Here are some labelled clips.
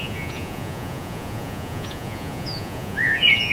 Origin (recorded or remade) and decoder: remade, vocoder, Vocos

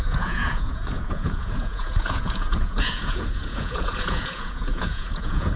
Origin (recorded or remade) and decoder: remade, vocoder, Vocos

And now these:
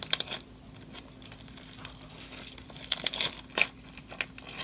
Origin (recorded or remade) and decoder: recorded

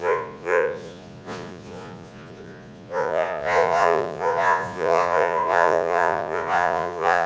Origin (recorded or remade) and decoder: remade, vocoder, Vocos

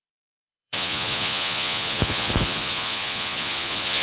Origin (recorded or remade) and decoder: remade, vocoder, Vocos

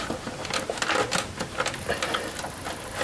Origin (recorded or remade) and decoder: recorded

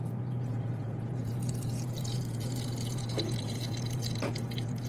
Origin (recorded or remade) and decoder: remade, vocoder, Vocos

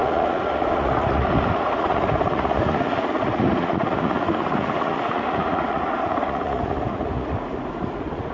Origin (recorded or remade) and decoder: remade, vocoder, Vocos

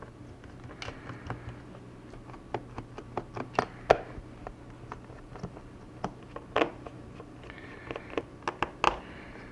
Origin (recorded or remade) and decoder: recorded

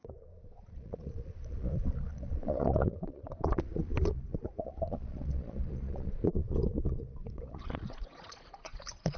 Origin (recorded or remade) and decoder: remade, vocoder, Vocos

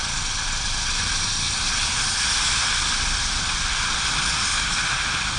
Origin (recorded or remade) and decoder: recorded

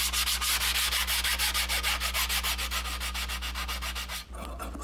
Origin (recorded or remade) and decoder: recorded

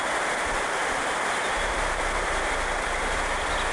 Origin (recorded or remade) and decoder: recorded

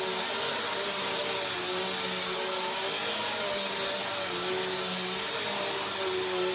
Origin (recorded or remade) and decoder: recorded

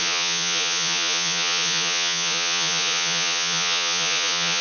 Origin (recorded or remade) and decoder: remade, vocoder, Vocos